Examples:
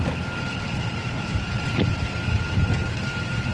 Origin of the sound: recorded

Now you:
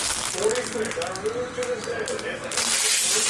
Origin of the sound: recorded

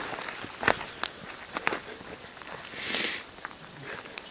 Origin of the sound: recorded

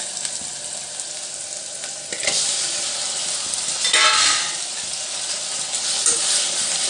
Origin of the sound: recorded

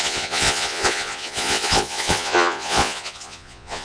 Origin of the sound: remade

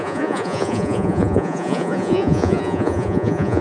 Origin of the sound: remade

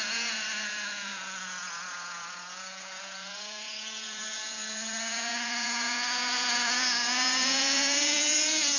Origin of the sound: remade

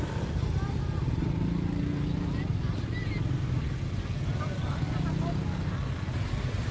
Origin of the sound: recorded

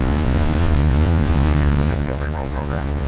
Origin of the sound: remade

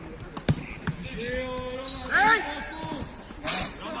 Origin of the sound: recorded